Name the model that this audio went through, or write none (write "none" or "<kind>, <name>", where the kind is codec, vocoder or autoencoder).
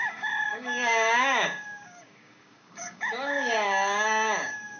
codec, DAC